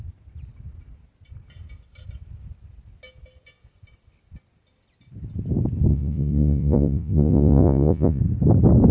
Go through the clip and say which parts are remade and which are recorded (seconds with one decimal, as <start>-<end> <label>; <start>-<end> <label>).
0.0-5.9 recorded; 5.9-8.2 remade; 8.2-8.9 recorded